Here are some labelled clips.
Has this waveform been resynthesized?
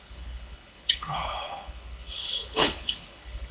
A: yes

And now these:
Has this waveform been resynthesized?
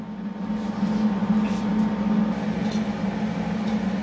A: no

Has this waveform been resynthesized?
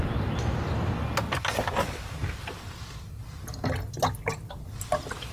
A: no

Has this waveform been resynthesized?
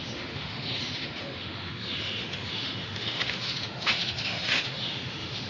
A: yes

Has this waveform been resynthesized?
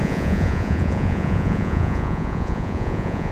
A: yes